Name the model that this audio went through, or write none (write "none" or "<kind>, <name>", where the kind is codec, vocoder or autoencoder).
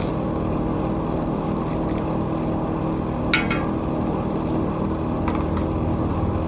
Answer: none